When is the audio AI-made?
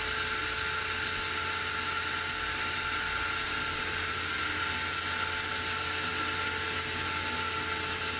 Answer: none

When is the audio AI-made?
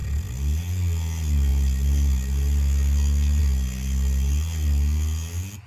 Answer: none